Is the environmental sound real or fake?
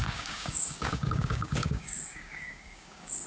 fake